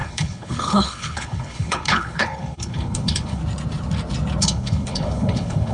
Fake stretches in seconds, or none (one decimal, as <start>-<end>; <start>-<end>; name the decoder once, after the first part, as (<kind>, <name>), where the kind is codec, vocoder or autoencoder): 0.0-3.4 (codec, HILCodec); 4.4-5.7

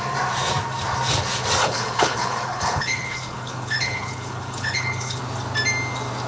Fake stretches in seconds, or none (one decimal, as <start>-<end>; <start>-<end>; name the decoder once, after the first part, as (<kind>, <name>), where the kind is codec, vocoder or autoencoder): 1.6-5.2 (codec, HILCodec)